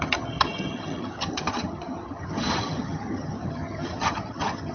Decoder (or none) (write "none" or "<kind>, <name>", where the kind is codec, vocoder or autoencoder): vocoder, HiFi-GAN